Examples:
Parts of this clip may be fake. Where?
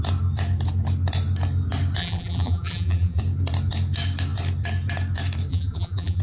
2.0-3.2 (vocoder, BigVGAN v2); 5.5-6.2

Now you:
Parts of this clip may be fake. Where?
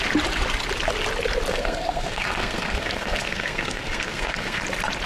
1.5-4.6 (codec, SNAC)